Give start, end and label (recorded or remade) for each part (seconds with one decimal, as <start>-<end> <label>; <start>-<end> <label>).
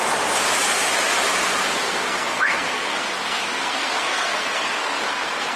0.0-1.8 recorded; 1.8-5.6 remade